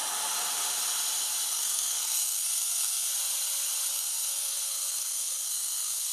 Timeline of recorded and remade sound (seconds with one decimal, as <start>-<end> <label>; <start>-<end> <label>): 0.0-1.5 recorded; 1.5-3.1 remade; 3.1-3.9 recorded; 3.9-6.1 remade